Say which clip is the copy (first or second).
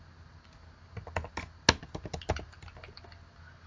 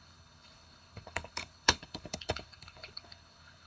second